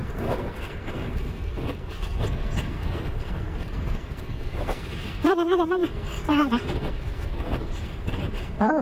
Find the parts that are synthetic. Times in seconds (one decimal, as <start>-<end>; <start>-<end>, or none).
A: 0.0-8.8